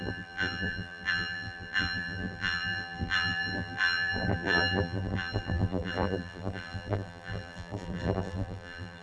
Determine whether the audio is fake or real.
fake